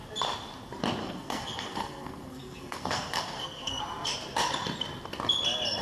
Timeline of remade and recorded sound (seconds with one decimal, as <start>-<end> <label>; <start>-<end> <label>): 0.0-1.0 recorded; 1.0-3.8 remade; 3.8-5.8 recorded